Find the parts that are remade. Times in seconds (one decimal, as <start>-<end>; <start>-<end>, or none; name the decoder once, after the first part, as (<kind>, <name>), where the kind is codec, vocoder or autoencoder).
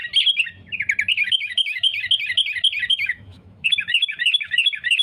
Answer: 1.3-1.9 (autoencoder, DAC-VAE); 2.9-5.0